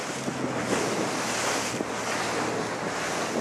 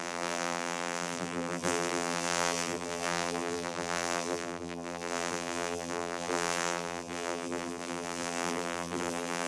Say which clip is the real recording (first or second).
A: first